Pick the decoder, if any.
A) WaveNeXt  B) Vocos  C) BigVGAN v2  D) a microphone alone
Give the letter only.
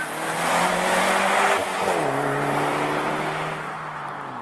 D